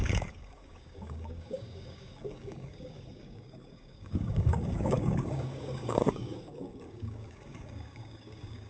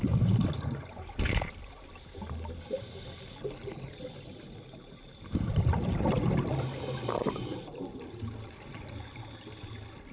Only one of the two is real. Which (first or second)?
second